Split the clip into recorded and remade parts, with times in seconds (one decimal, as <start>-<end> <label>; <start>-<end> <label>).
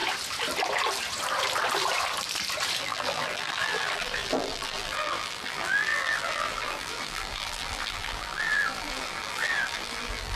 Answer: 0.0-2.8 recorded; 2.8-10.4 remade